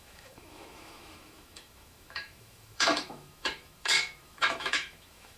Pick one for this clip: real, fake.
fake